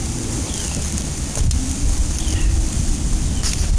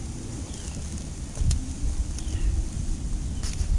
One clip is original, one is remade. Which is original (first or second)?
first